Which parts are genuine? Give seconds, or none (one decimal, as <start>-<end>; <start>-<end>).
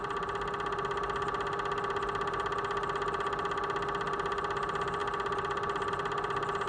0.0-6.7